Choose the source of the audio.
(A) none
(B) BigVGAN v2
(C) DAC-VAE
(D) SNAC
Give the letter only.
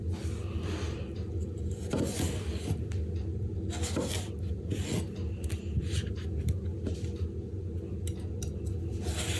A